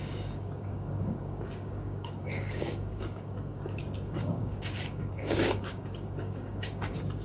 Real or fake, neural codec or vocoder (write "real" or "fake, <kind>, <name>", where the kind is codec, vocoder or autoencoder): fake, codec, DAC